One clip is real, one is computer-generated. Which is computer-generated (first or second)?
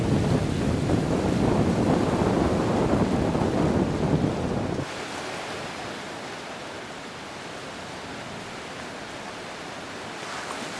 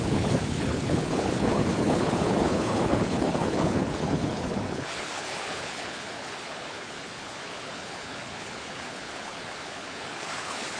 second